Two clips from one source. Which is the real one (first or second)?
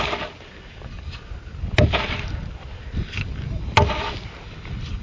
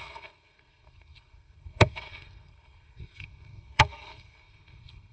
first